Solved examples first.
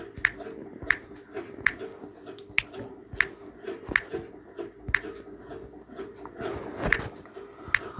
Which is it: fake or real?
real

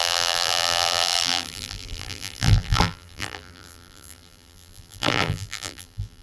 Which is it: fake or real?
fake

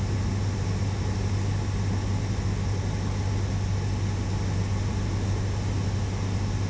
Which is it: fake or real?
real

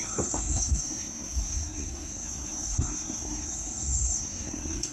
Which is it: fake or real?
fake